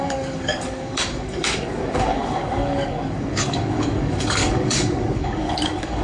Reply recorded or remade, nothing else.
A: remade